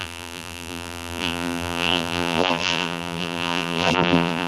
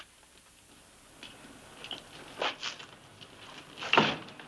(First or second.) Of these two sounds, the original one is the second